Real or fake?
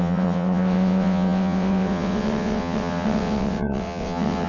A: fake